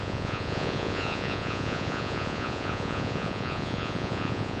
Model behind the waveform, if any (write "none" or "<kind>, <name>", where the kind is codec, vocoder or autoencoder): vocoder, Vocos